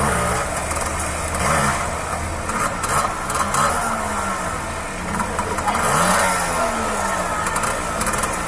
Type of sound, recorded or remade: recorded